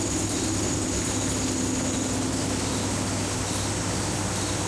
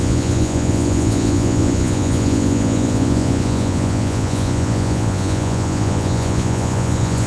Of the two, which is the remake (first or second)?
second